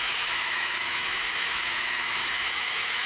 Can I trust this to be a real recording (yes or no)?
no